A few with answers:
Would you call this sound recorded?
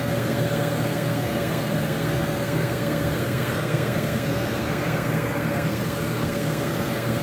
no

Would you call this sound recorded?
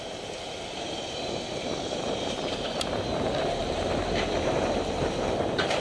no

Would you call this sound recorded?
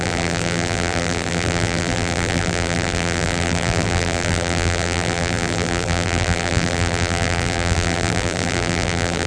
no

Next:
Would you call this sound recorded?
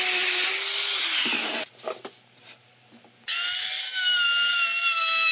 yes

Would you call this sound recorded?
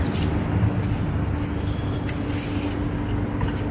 yes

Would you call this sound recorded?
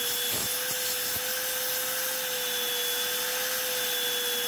yes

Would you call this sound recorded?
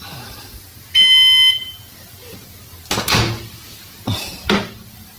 yes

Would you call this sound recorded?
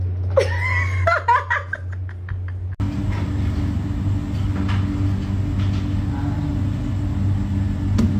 yes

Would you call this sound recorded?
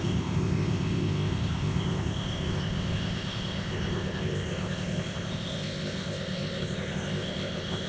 no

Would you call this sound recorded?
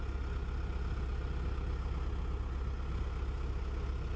yes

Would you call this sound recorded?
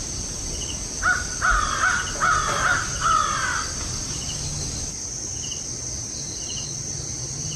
yes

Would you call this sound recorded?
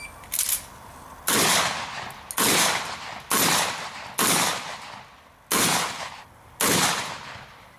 yes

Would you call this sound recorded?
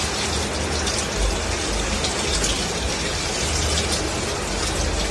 yes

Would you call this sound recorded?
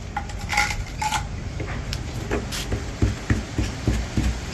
yes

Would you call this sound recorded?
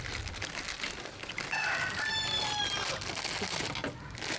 yes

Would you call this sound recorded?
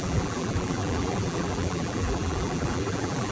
no